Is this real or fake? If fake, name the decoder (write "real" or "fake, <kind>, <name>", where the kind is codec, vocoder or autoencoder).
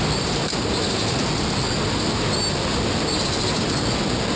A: real